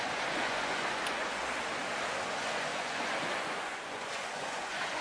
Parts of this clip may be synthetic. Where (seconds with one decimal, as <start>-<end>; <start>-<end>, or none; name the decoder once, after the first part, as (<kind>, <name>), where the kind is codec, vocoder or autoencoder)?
0.0-1.4 (vocoder, Vocos); 2.3-5.0